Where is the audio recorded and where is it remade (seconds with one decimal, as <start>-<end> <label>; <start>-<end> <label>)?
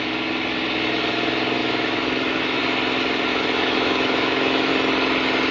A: 0.0-1.6 recorded; 1.6-2.6 remade; 2.6-3.3 recorded; 3.3-4.7 remade; 4.7-5.5 recorded